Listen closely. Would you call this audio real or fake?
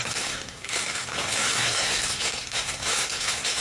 fake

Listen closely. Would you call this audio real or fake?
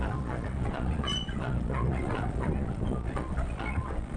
fake